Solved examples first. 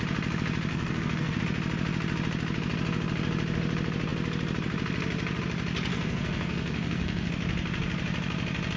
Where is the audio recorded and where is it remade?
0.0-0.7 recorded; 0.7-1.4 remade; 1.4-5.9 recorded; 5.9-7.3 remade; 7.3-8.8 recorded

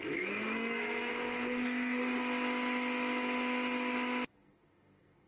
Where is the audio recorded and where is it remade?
0.0-1.1 remade; 1.1-4.3 recorded; 4.3-5.3 remade

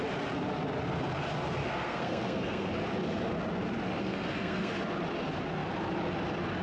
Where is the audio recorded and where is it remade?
0.0-1.6 recorded; 1.6-2.7 remade; 2.7-4.0 recorded; 4.0-4.7 remade; 4.7-6.6 recorded

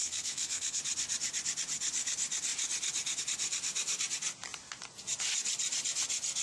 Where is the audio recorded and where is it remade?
0.0-0.8 remade; 0.8-6.4 recorded

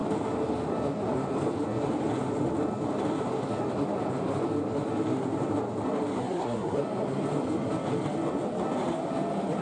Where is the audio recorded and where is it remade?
0.0-6.2 recorded; 6.2-6.8 remade; 6.8-9.6 recorded